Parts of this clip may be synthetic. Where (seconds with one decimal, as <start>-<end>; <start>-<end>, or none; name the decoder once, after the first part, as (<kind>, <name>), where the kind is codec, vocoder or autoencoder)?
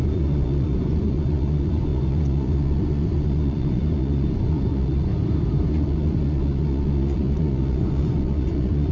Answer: 0.0-5.1 (vocoder, Vocos); 5.7-8.9